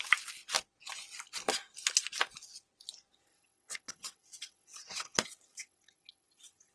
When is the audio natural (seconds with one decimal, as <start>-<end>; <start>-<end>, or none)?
0.0-3.3